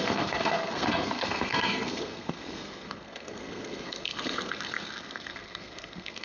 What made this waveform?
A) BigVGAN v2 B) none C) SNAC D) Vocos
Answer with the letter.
C